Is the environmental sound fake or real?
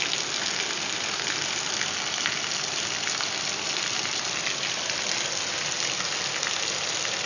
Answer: real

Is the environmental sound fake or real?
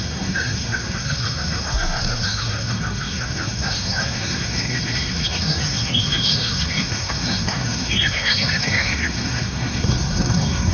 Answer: fake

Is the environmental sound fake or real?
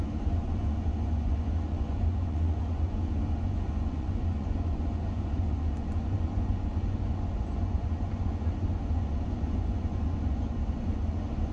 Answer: fake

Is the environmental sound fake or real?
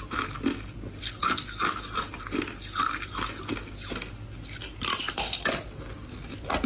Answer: real